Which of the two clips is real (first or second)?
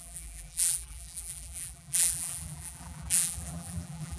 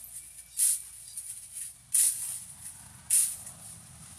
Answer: second